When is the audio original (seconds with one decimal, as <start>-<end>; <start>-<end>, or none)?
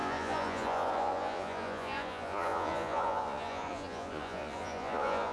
none